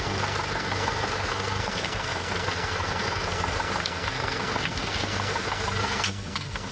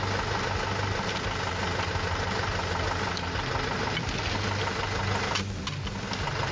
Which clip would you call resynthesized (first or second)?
first